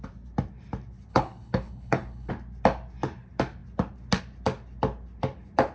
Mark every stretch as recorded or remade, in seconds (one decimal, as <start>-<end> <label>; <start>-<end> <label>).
0.0-1.1 recorded; 1.1-2.3 remade; 2.3-5.7 recorded